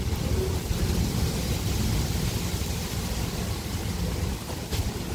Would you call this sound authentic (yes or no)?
yes